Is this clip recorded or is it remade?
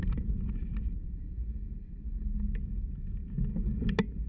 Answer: recorded